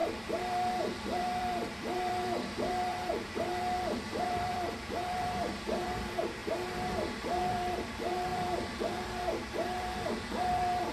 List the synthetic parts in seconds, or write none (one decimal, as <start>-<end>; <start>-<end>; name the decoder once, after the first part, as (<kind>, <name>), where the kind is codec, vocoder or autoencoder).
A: 0.0-10.9 (vocoder, BigVGAN v2)